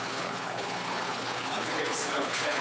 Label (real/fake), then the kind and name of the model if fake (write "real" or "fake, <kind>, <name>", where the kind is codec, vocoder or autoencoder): fake, codec, HILCodec